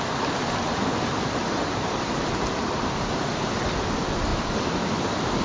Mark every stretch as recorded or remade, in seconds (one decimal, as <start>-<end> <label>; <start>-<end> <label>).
0.0-1.4 recorded; 1.4-3.3 remade; 3.3-5.4 recorded